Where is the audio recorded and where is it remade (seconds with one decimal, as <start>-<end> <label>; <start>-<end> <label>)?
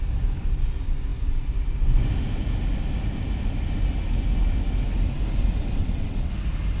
0.0-5.8 recorded; 5.8-6.3 remade; 6.3-6.8 recorded